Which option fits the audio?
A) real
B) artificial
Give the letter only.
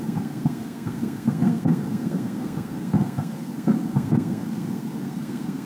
B